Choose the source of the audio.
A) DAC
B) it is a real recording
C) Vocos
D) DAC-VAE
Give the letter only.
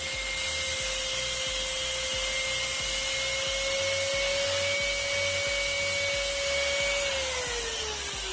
B